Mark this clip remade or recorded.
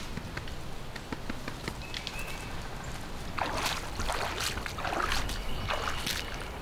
recorded